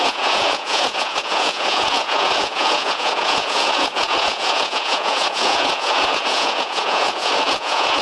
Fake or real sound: fake